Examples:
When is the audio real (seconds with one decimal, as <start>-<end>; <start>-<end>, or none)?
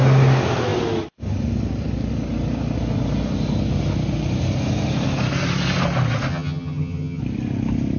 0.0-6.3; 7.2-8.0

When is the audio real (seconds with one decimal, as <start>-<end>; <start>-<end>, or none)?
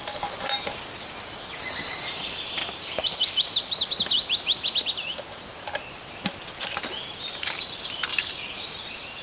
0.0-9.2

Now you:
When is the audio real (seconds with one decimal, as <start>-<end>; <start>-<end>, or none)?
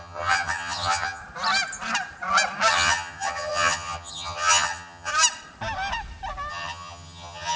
1.2-2.7; 5.1-6.5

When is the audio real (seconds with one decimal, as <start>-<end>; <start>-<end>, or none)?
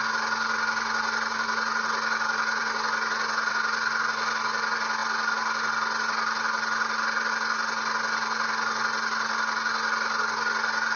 0.0-11.0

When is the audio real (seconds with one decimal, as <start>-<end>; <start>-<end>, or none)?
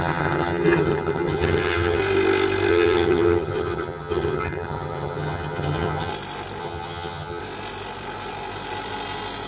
2.0-2.7; 6.1-6.6; 7.4-9.5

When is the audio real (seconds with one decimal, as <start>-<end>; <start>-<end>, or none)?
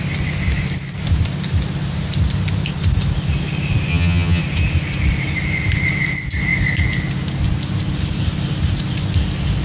0.0-3.9; 4.4-9.6